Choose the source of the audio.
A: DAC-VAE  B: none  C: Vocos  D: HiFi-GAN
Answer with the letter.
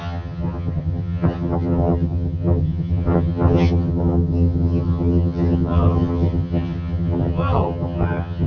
D